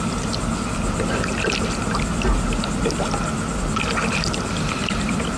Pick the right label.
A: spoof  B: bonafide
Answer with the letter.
B